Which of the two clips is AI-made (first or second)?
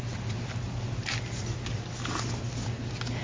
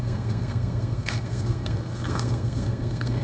second